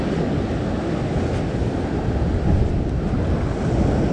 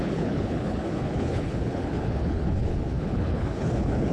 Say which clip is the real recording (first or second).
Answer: first